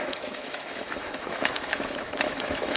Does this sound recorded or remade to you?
remade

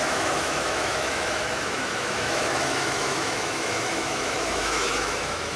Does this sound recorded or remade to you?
remade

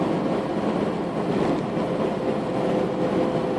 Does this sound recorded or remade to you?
recorded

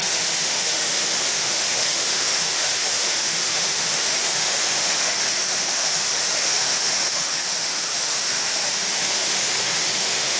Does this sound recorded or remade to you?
remade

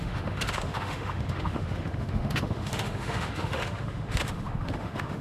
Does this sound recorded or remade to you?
remade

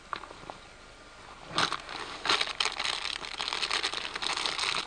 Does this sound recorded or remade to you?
recorded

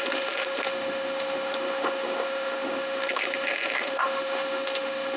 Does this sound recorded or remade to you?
remade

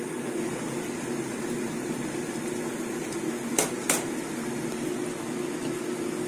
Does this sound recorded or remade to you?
recorded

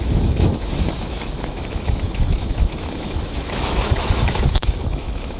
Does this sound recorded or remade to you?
remade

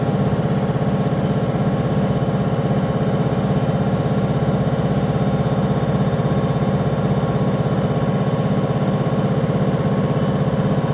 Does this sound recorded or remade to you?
recorded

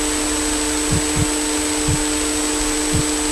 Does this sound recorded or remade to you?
recorded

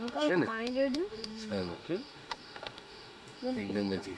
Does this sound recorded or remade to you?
remade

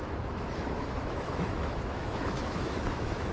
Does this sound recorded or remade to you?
remade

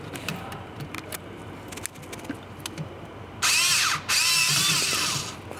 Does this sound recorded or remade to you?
recorded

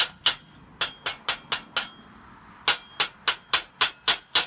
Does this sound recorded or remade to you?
recorded